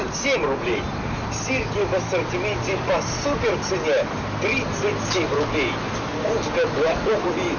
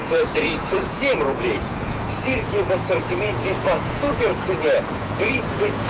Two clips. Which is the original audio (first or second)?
first